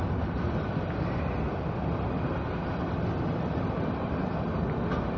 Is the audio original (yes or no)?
yes